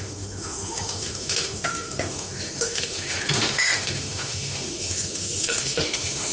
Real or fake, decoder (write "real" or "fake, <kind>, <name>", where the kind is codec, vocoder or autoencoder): fake, autoencoder, DAC-VAE